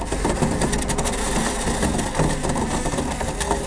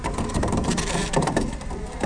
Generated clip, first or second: second